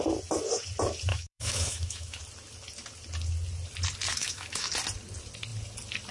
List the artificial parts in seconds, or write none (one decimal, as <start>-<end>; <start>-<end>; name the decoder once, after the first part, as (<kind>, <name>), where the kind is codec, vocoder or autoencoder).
1.1-2.2 (autoencoder, DAC-VAE); 4.1-4.7